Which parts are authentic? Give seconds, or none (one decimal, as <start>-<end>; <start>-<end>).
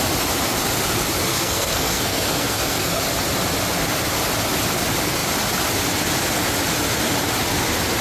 0.0-1.3; 3.0-8.0